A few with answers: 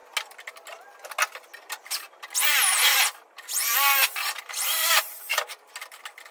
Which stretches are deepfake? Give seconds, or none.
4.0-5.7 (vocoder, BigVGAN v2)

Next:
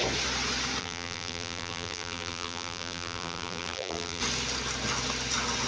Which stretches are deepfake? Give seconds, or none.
0.8-4.2 (vocoder, BigVGAN v2)

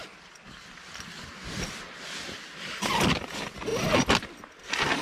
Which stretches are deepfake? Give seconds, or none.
none